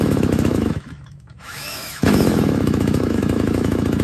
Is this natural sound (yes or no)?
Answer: no